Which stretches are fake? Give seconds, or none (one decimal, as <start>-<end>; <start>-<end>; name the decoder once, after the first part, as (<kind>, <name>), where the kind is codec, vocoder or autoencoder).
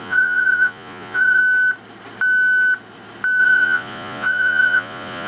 0.0-1.4 (vocoder, Vocos); 3.4-5.3